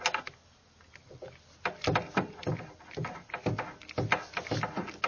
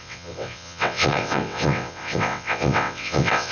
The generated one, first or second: second